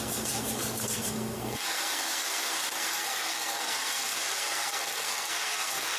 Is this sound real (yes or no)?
no